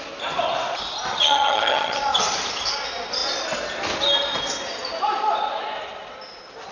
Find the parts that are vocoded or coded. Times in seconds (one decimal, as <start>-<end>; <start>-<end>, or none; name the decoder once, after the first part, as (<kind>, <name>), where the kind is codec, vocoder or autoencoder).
1.1-2.0 (vocoder, HiFi-GAN)